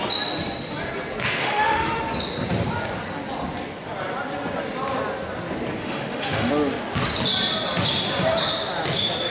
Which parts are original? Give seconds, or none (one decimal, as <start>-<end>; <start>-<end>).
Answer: 0.0-1.4; 2.0-5.8; 6.5-9.3